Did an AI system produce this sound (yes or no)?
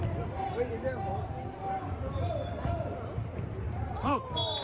yes